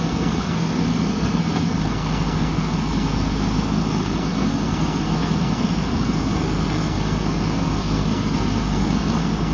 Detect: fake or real fake